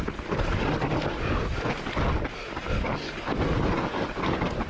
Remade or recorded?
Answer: recorded